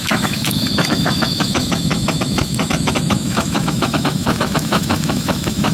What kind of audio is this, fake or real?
fake